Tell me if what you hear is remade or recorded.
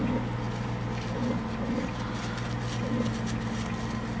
recorded